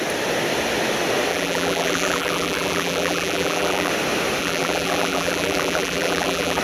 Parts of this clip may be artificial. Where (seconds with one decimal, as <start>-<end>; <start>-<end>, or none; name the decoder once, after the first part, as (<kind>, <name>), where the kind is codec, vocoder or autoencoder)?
1.3-3.9 (vocoder, BigVGAN v2); 4.4-6.6